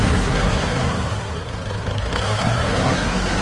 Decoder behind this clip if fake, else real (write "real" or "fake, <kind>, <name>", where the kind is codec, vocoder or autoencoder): fake, codec, SNAC